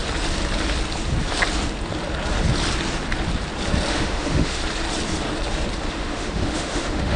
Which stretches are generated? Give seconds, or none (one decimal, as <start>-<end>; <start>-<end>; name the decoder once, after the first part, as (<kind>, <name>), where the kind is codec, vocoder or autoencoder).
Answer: 3.9-4.6 (autoencoder, DAC-VAE); 5.9-7.2